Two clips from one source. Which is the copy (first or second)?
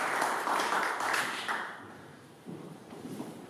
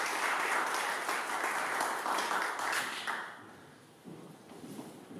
first